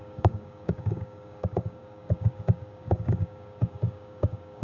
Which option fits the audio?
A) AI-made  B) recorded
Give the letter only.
A